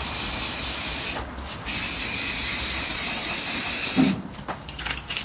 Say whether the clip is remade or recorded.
recorded